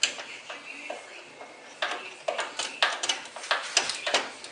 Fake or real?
real